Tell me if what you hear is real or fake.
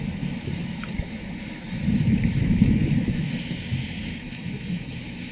fake